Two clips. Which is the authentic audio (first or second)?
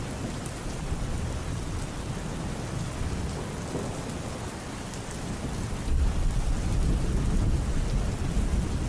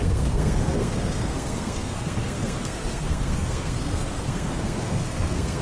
first